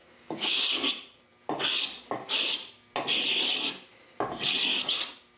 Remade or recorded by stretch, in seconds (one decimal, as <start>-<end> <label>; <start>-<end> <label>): 0.0-0.6 remade; 0.6-5.4 recorded